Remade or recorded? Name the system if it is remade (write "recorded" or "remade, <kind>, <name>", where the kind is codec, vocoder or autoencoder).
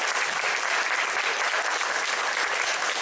recorded